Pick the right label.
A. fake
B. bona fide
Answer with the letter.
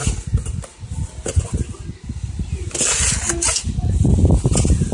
B